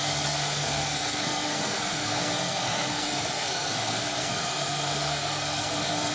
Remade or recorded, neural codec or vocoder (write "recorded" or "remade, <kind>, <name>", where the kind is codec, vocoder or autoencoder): remade, codec, SNAC